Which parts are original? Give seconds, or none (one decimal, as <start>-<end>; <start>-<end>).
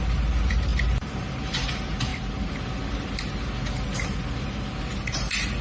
0.0-5.6